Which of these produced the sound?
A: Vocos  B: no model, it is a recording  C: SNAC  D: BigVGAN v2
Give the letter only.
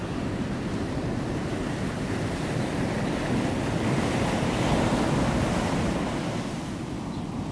B